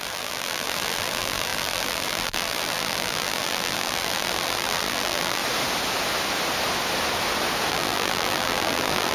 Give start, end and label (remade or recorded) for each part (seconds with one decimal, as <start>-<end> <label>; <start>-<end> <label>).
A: 0.0-5.4 remade; 5.4-7.7 recorded; 7.7-9.1 remade